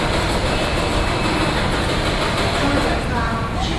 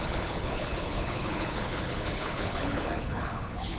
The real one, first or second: first